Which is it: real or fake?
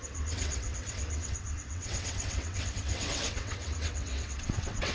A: fake